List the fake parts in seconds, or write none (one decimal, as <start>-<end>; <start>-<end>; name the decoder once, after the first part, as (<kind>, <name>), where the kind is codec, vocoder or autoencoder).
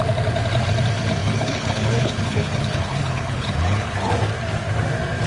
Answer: 1.2-4.0 (codec, HILCodec)